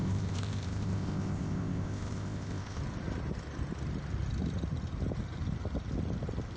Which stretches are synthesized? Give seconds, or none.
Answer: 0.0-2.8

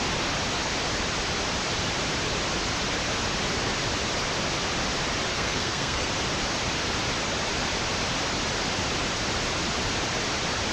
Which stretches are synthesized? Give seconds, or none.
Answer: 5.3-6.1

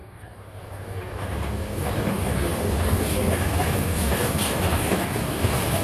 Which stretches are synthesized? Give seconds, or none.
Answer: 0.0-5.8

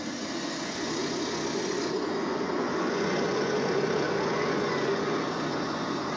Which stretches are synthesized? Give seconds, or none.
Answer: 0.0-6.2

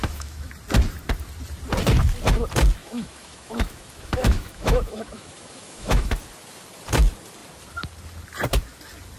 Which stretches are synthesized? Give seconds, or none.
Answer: 0.0-0.5; 2.8-6.2

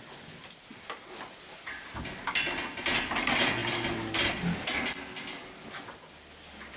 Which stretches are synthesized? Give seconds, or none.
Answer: none